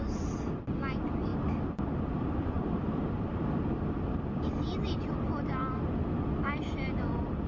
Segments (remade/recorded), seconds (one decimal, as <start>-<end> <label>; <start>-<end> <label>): 0.0-1.3 recorded; 1.3-3.8 remade; 3.8-7.5 recorded